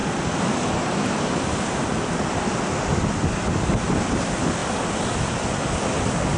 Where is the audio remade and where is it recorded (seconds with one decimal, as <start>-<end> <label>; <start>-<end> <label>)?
0.0-6.4 recorded